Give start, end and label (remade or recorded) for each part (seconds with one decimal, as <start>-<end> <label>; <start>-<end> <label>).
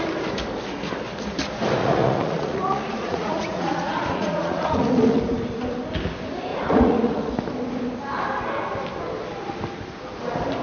0.0-1.8 recorded; 1.8-5.2 remade; 5.2-6.5 recorded; 6.5-7.3 remade; 7.3-10.6 recorded